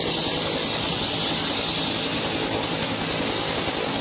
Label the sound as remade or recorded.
recorded